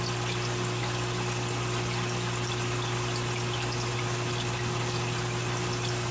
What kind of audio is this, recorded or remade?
recorded